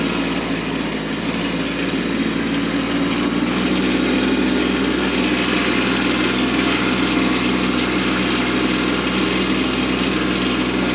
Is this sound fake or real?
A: real